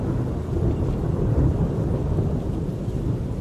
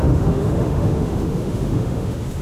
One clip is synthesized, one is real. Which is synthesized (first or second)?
second